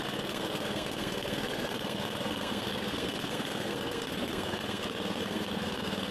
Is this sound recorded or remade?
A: remade